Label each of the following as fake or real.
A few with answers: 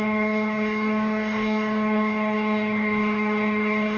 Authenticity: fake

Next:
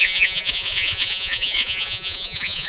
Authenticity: fake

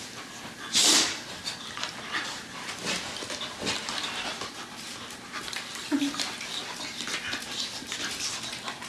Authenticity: real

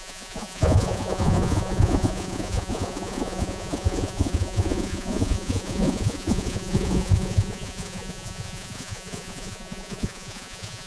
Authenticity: fake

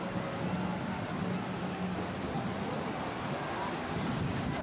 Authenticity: real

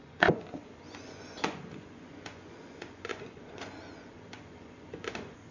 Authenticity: fake